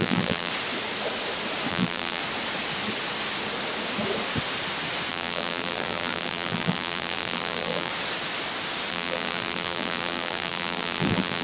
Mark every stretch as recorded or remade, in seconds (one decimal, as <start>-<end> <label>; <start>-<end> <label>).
0.0-0.5 remade; 0.5-1.7 recorded; 1.7-2.2 remade; 2.2-5.1 recorded; 5.1-7.9 remade; 7.9-8.9 recorded; 8.9-11.4 remade